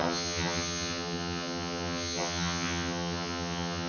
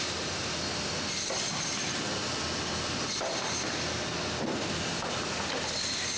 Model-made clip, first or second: first